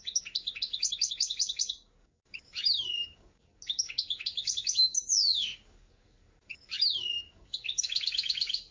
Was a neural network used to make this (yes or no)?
yes